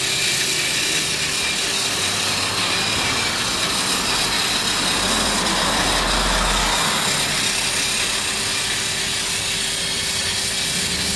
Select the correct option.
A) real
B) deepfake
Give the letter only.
A